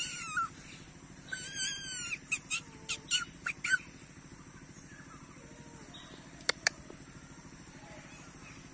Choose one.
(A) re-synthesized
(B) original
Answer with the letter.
B